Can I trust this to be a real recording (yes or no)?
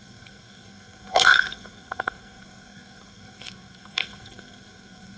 no